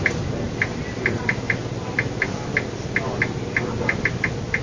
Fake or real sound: real